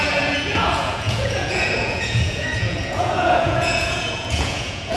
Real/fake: fake